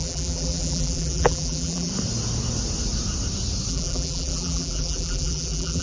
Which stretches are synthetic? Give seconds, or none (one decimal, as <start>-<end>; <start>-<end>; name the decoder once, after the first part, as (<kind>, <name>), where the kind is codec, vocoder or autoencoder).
0.0-1.9 (vocoder, BigVGAN v2); 3.7-5.8